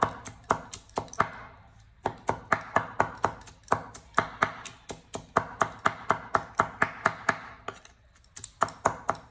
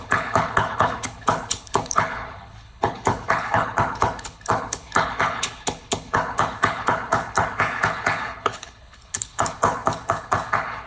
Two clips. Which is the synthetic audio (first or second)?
second